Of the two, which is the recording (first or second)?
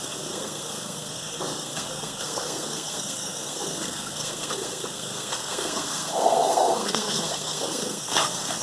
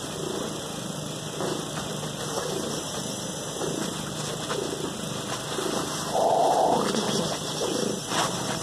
second